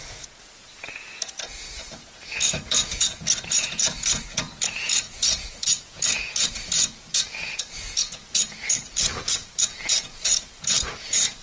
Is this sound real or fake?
fake